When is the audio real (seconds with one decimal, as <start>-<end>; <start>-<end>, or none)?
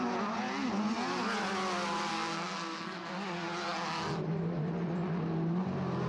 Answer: 0.0-2.1; 3.1-6.1